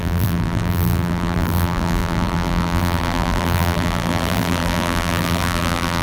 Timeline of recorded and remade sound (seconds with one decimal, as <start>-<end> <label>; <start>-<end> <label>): 0.0-6.0 remade